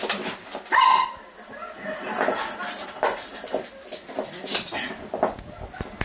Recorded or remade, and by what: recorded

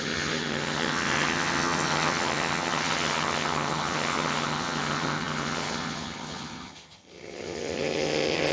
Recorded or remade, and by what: remade, vocoder, HiFi-GAN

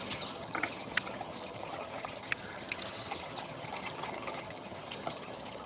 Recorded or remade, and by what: remade, vocoder, HiFi-GAN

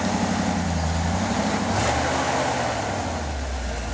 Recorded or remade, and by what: recorded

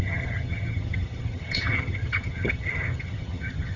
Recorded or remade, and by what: remade, vocoder, HiFi-GAN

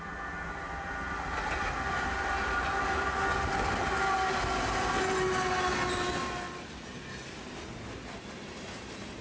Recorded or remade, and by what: recorded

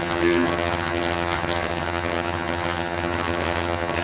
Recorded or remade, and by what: remade, vocoder, HiFi-GAN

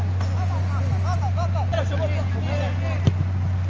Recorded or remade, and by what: recorded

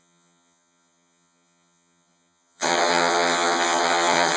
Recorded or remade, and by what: remade, vocoder, HiFi-GAN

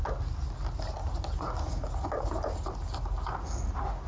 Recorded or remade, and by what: recorded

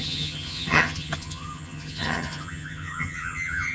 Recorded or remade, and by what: remade, vocoder, HiFi-GAN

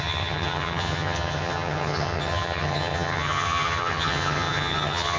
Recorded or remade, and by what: remade, vocoder, HiFi-GAN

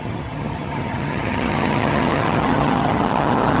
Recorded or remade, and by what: remade, vocoder, HiFi-GAN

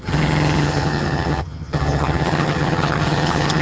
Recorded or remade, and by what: remade, vocoder, HiFi-GAN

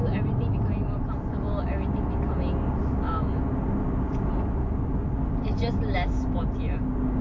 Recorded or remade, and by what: recorded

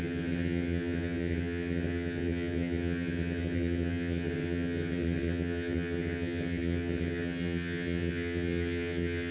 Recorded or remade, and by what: remade, vocoder, HiFi-GAN